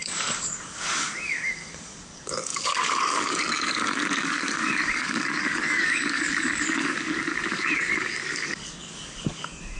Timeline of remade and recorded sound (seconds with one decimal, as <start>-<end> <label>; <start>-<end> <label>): 0.0-9.8 remade